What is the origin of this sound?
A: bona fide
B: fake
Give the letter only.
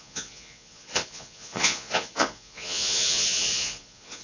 B